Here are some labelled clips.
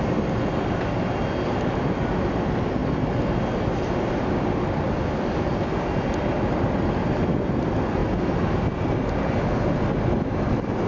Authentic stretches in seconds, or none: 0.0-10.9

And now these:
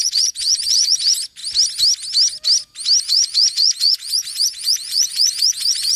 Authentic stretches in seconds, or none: 1.4-3.0

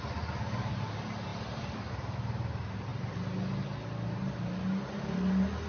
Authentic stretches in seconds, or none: 0.0-5.7

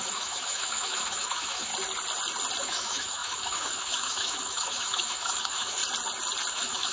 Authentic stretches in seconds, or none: 1.7-2.6; 5.8-6.5